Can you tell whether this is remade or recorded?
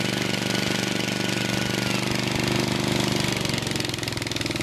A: recorded